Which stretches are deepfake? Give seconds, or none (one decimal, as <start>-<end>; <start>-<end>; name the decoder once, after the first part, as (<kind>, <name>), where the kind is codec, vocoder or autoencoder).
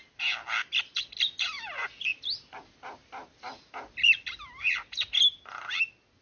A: none